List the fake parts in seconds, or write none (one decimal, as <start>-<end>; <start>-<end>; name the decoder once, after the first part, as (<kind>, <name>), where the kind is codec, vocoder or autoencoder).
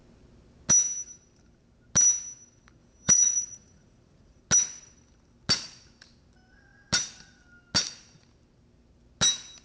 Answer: 2.8-4.4 (vocoder, Vocos)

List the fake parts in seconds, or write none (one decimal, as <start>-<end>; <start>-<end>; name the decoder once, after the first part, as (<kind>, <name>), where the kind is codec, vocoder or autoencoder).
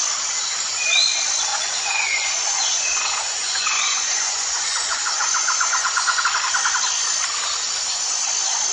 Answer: 1.5-6.2 (vocoder, Vocos)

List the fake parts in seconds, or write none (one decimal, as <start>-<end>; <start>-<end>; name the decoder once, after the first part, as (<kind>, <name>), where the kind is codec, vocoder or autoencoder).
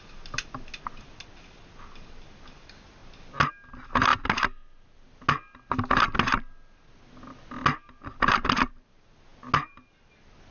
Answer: none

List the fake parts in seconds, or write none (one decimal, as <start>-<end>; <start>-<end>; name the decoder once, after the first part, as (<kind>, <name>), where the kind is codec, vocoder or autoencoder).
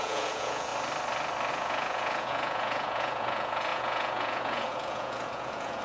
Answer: 0.0-0.7 (vocoder, Vocos); 1.5-5.8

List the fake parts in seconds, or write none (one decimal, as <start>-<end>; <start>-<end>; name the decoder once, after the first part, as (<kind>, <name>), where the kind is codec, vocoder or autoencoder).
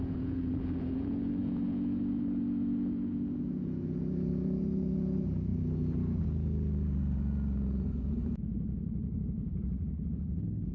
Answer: 0.0-10.7 (vocoder, Vocos)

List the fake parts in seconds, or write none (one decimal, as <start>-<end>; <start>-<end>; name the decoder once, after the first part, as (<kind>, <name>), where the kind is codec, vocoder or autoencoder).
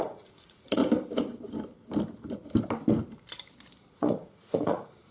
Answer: 0.0-0.8 (vocoder, Vocos); 3.9-5.1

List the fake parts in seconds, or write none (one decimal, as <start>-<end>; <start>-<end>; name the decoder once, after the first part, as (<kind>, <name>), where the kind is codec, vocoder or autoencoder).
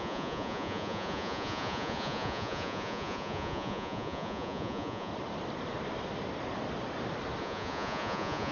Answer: 0.0-5.1 (vocoder, Vocos); 7.4-8.5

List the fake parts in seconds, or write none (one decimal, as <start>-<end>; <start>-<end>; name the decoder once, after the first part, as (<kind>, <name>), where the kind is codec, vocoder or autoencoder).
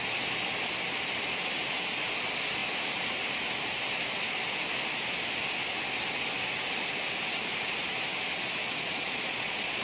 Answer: 8.6-9.8 (vocoder, Vocos)